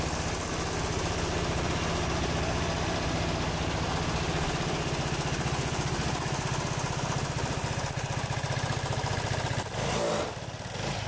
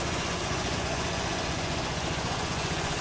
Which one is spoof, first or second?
second